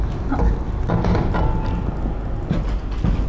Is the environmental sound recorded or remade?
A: recorded